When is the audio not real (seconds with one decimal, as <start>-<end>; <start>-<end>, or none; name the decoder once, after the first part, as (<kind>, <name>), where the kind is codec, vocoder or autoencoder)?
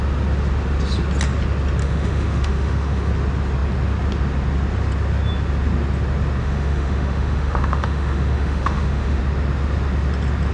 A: 1.8-3.1 (autoencoder, DAC-VAE); 6.4-9.2